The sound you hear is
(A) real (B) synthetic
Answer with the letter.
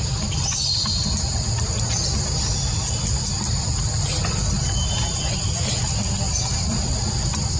A